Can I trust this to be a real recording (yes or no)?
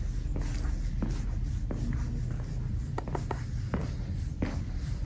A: yes